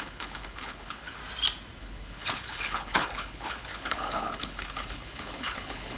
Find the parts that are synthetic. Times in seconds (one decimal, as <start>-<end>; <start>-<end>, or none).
0.0-1.2; 1.8-6.0